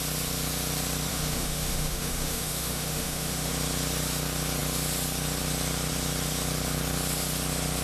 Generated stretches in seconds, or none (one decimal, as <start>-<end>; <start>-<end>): 1.1-3.5